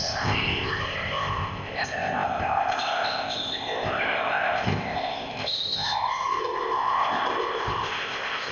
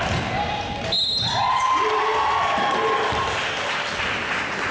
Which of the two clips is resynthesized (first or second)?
first